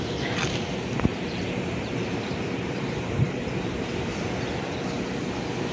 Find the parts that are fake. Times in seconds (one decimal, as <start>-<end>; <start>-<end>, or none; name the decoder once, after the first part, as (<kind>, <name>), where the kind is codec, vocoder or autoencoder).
1.1-4.5 (vocoder, BigVGAN v2)